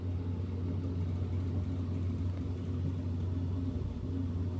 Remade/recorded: recorded